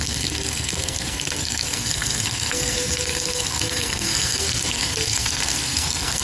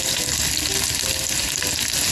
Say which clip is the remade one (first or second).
first